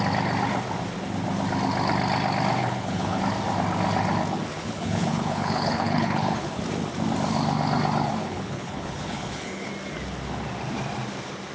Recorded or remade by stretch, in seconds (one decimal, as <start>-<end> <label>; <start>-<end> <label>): 0.0-2.6 recorded; 2.6-3.2 remade; 3.2-4.5 recorded; 4.5-6.6 remade; 6.6-8.2 recorded; 8.2-9.7 remade; 9.7-11.5 recorded